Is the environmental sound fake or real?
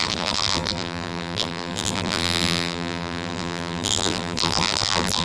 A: fake